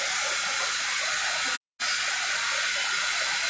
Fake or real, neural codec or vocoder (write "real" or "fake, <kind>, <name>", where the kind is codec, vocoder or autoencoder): real